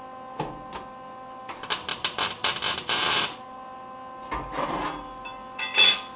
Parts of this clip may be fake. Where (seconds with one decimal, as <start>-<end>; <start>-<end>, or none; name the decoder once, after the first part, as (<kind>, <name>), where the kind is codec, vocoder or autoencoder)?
none

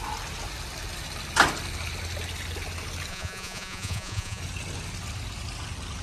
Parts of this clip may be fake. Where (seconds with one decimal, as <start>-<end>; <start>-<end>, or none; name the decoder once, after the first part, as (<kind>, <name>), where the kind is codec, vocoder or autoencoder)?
3.1-4.4 (vocoder, Vocos)

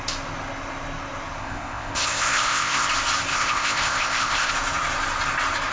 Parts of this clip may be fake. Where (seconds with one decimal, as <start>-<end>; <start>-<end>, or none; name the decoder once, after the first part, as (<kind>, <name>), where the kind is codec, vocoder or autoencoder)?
1.4-2.9 (codec, ZipCodec); 3.3-4.5

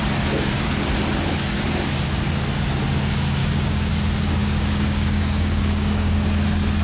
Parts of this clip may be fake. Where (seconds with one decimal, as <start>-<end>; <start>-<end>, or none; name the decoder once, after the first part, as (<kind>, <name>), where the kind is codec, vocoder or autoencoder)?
3.4-3.9 (codec, DAC); 4.4-6.2